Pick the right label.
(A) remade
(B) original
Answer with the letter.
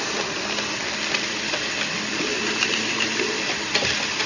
B